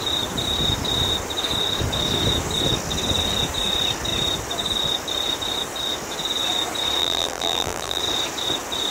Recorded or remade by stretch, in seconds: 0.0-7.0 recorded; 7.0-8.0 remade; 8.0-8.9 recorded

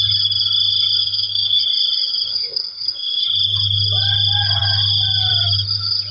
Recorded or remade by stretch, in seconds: 0.0-1.0 recorded; 1.0-1.6 remade; 1.6-2.3 recorded; 2.3-3.2 remade; 3.2-6.1 recorded

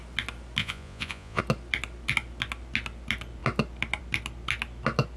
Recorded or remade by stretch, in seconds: 0.0-0.6 recorded; 0.6-1.4 remade; 1.4-5.2 recorded